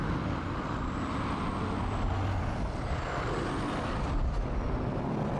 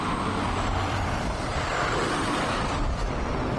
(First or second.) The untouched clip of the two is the first